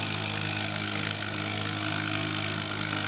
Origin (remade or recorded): remade